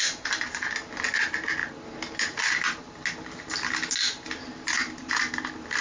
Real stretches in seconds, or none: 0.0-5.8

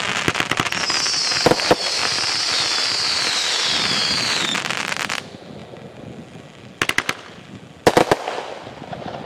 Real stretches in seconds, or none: 0.0-9.3

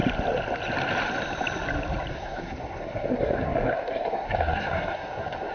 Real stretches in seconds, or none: 0.0-2.1

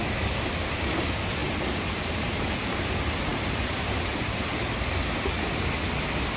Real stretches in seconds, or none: 0.0-6.4

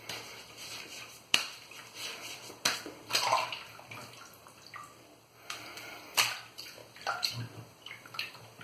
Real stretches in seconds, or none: 1.8-3.1; 4.0-5.2; 6.8-7.4

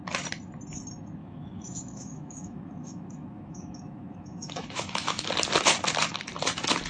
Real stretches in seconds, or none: 0.0-1.2; 5.3-6.9